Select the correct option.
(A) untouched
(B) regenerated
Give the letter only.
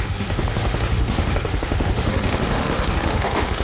B